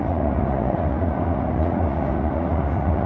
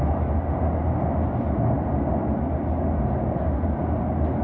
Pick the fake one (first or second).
first